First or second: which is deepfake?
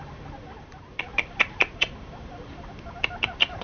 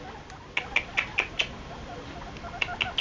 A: first